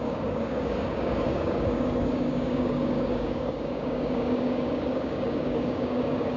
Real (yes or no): no